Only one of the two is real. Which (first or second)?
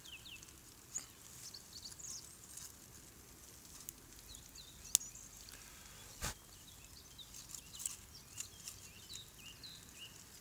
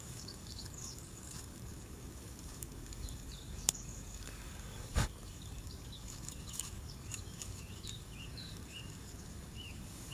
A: first